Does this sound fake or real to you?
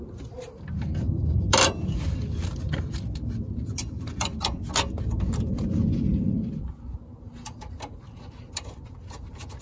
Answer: real